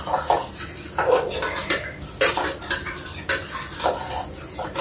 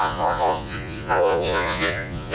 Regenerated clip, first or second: second